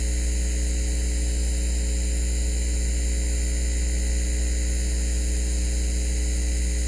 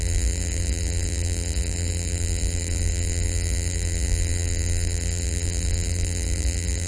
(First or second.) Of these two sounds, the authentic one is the first